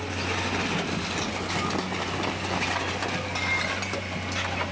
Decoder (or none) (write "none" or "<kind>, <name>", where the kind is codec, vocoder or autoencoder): none